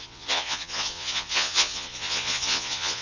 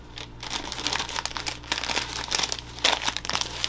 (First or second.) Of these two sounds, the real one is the second